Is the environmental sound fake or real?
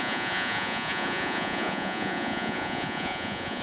fake